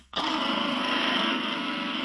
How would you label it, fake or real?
fake